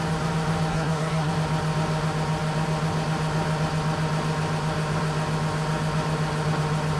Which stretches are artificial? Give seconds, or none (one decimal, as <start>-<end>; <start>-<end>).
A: 0.7-1.3

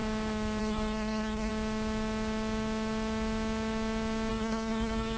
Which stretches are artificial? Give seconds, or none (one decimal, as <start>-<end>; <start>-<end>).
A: 0.6-1.5; 4.3-5.2

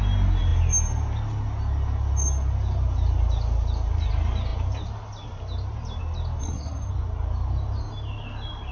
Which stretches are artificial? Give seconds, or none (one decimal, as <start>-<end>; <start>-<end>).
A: 6.4-6.9